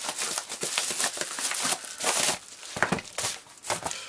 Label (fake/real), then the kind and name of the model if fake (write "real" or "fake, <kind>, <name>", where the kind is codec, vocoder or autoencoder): real